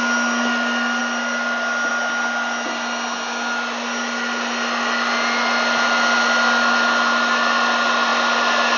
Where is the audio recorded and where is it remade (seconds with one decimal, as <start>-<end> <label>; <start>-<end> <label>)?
0.0-8.8 recorded